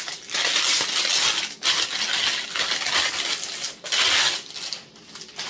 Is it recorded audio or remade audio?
recorded